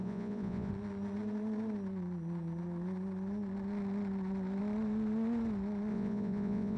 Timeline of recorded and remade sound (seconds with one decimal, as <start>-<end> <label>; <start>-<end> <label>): 0.0-0.7 remade; 0.7-5.9 recorded; 5.9-6.8 remade